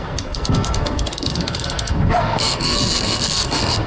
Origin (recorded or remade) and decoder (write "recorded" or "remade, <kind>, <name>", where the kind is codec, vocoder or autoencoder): remade, codec, SNAC